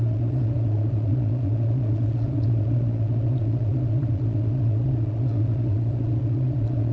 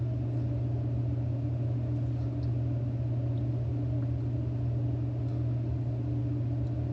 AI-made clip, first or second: first